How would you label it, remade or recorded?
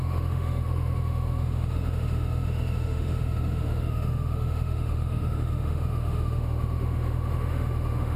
remade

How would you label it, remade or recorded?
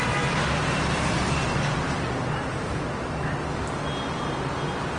recorded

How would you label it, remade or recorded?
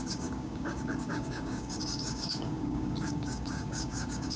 remade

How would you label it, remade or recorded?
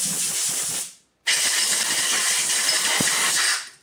recorded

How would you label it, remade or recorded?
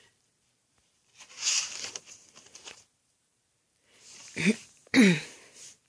remade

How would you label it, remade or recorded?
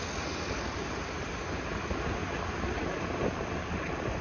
recorded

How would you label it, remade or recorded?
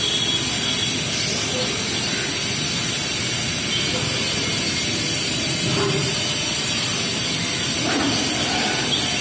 recorded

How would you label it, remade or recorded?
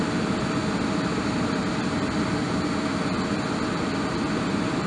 remade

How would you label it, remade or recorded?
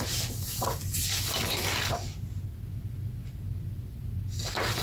recorded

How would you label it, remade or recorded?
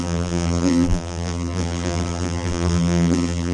remade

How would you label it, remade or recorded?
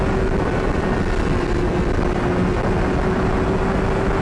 recorded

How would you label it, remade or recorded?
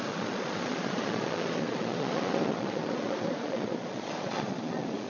remade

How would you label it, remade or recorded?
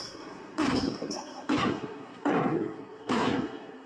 remade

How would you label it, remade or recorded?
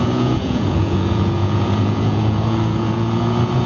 remade